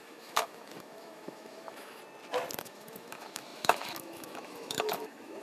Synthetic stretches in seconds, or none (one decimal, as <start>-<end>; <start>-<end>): 0.0-2.0; 2.6-5.4